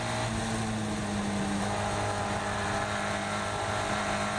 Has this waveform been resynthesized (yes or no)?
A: no